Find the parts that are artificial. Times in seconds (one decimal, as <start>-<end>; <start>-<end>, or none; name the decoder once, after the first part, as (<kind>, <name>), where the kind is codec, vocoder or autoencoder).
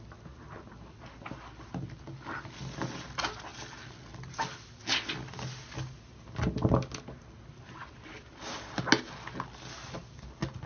none